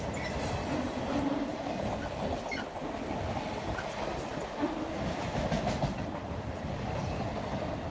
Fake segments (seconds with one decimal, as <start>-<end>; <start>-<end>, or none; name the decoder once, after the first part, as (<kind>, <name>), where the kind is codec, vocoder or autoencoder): none